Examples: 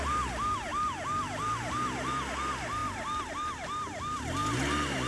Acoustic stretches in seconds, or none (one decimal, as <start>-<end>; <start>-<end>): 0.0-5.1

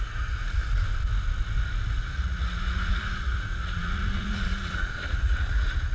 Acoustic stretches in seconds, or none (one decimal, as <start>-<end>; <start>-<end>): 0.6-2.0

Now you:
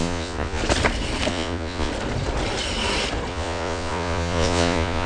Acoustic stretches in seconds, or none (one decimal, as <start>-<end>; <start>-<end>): 0.6-1.3; 1.9-3.3